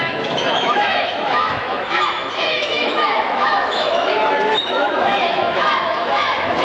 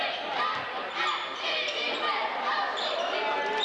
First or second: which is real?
second